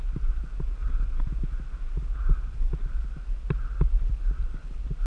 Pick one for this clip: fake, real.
real